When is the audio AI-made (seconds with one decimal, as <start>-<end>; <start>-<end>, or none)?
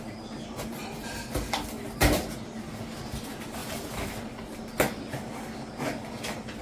none